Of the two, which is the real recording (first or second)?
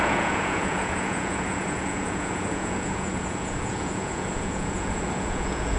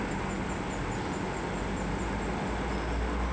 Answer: second